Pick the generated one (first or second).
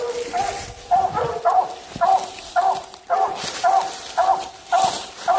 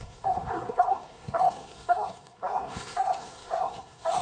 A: second